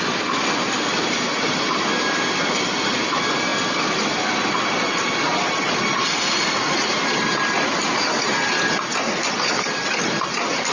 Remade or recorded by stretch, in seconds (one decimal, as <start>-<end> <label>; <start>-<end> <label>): 0.0-6.1 recorded; 6.1-7.0 remade; 7.0-10.7 recorded